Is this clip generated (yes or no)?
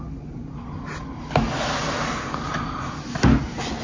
no